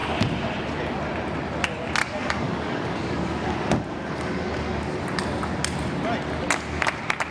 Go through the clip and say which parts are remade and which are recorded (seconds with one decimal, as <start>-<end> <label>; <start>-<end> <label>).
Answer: 0.0-2.0 recorded; 2.0-5.0 remade; 5.0-7.3 recorded